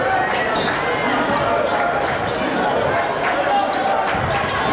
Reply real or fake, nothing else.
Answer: real